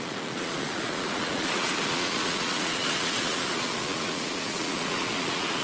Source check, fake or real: fake